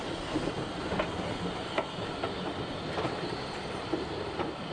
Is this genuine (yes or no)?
yes